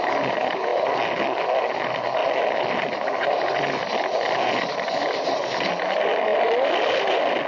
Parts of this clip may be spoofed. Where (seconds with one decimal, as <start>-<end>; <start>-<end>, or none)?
none